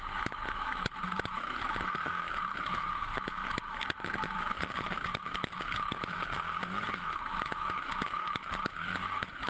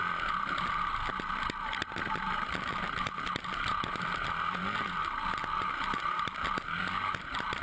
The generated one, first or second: first